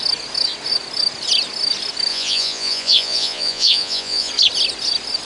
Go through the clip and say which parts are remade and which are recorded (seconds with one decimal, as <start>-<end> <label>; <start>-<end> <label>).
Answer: 0.0-2.1 recorded; 2.1-4.3 remade; 4.3-5.2 recorded